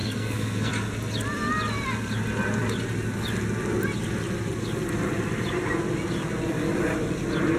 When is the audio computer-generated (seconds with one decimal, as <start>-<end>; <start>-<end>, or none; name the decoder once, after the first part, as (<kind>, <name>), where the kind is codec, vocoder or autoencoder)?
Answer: 0.0-0.7 (codec, SNAC)